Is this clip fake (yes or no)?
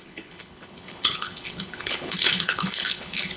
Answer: yes